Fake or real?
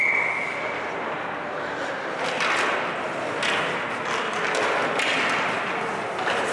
real